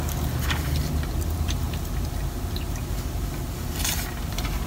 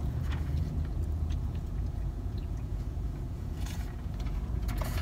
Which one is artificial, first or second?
second